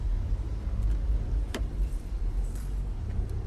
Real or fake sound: fake